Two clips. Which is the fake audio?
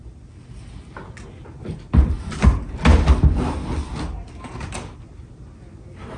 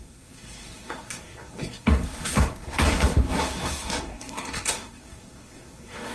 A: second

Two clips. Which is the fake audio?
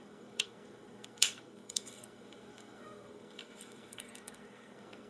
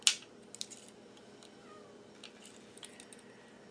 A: first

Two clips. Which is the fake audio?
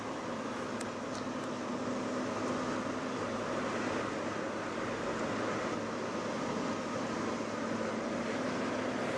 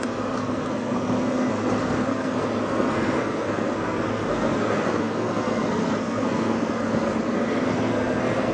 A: second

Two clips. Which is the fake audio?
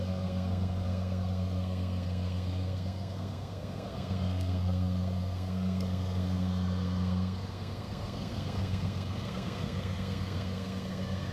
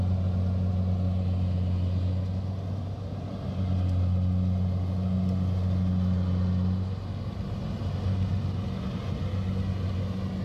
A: first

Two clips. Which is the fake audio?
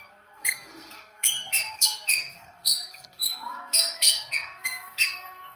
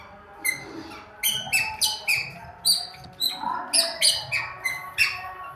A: first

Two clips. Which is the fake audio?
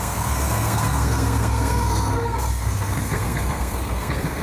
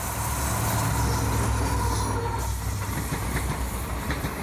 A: first